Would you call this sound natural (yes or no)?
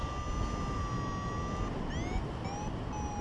yes